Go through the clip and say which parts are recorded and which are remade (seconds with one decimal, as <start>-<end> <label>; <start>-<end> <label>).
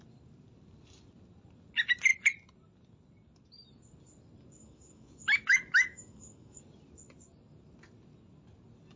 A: 0.0-4.6 recorded; 4.6-6.6 remade; 6.6-9.0 recorded